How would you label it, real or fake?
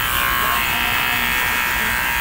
fake